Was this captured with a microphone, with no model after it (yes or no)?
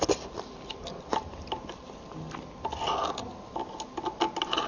yes